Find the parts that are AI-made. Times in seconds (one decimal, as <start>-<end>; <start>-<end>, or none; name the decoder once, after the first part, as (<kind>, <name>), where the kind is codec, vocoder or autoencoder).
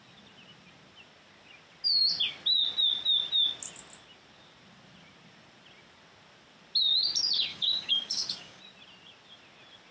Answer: 7.5-8.6 (codec, DAC)